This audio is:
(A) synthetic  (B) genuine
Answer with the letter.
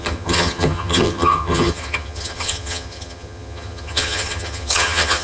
A